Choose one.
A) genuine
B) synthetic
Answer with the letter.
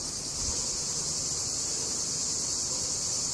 A